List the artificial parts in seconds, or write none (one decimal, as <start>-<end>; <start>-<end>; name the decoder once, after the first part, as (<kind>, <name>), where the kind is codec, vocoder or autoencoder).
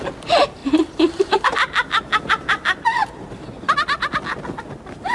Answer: 0.6-3.3 (vocoder, BigVGAN v2)